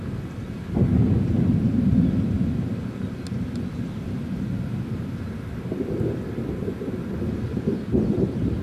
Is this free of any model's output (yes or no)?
yes